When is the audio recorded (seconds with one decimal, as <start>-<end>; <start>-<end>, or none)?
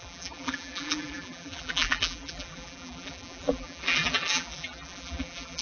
none